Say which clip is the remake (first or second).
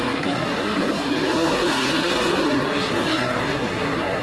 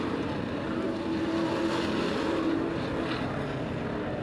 first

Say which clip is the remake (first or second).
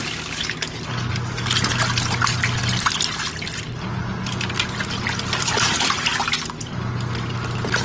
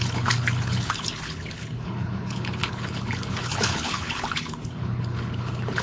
second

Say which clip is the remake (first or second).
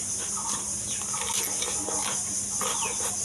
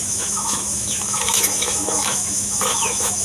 second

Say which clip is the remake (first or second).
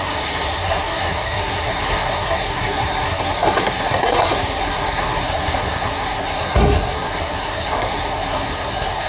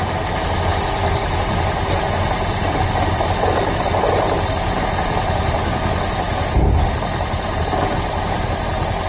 first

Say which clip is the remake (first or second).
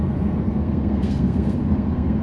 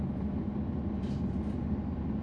first